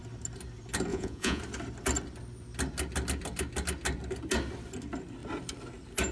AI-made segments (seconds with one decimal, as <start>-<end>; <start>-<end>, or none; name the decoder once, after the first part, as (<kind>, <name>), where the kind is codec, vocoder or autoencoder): 0.9-1.4 (vocoder, Vocos)